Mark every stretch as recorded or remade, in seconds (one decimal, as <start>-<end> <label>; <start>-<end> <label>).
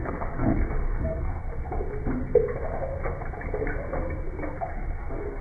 0.0-1.5 remade; 1.5-4.7 recorded; 4.7-5.4 remade